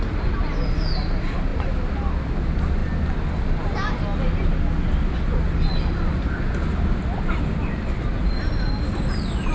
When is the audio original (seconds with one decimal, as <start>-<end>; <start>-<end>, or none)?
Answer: 0.0-1.5; 2.1-9.5